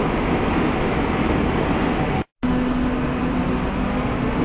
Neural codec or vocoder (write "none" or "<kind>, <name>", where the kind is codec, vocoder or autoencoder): none